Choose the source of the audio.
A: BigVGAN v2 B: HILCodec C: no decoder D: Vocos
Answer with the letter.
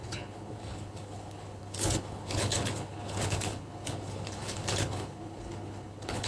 B